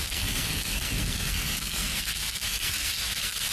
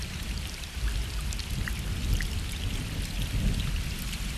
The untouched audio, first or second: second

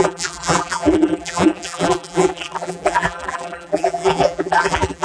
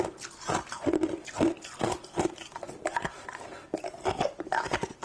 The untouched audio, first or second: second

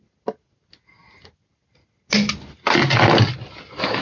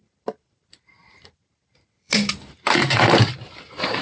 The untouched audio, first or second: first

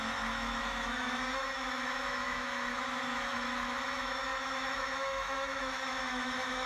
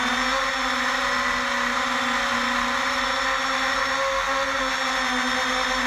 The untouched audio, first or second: second